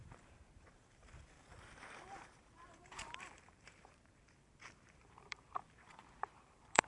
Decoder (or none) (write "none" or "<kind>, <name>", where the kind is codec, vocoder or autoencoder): vocoder, BigVGAN v2